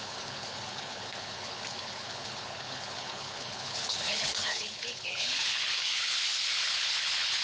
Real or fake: fake